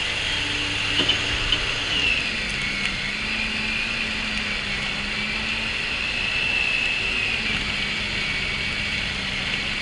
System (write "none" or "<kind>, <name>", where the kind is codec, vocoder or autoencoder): none